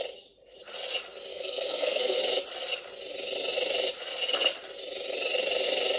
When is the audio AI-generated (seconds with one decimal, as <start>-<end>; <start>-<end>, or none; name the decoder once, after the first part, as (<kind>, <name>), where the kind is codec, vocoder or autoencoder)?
1.3-2.2 (codec, SNAC)